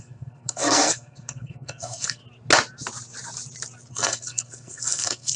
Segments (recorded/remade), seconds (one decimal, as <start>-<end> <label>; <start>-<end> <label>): 0.0-2.2 remade; 2.2-3.9 recorded; 3.9-5.4 remade

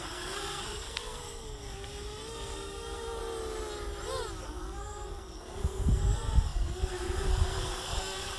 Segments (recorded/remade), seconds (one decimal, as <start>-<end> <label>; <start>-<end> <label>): 0.0-3.2 remade; 3.2-4.4 recorded; 4.4-8.4 remade

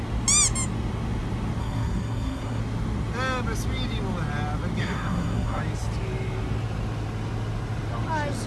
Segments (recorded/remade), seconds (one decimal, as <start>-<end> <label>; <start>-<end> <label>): 0.0-1.6 recorded; 1.6-2.6 remade; 2.6-4.8 recorded; 4.8-5.6 remade; 5.6-8.5 recorded

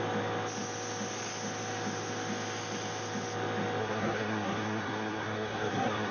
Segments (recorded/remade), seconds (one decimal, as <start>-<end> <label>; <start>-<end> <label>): 0.0-3.8 recorded; 3.8-6.1 remade

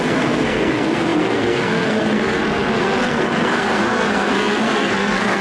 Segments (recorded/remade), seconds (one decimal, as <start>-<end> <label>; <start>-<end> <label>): 0.0-5.4 remade

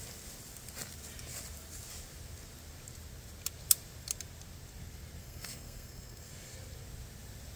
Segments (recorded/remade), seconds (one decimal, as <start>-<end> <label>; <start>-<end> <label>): 0.0-5.2 recorded; 5.2-6.3 remade; 6.3-7.6 recorded

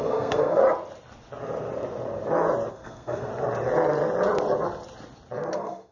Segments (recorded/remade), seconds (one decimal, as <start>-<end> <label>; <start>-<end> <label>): 0.0-0.6 remade; 0.6-2.7 recorded; 2.7-3.3 remade; 3.3-5.5 recorded; 5.5-5.9 remade

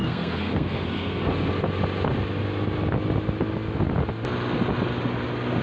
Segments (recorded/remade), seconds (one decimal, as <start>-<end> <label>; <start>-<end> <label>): 0.0-1.3 remade; 1.3-5.6 recorded